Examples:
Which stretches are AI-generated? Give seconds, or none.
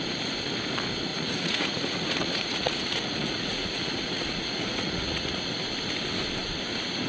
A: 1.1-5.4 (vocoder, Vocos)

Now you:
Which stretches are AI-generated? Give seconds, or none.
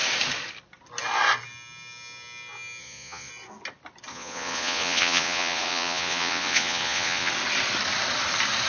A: 2.8-3.3 (vocoder, Vocos); 4.1-7.3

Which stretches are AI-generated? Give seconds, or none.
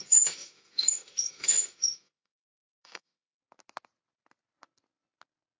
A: 0.0-3.4 (autoencoder, DAC-VAE)